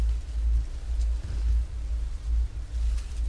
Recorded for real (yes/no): yes